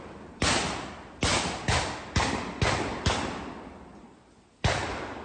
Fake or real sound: real